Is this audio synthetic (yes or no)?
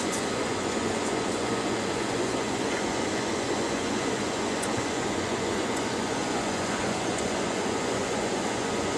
yes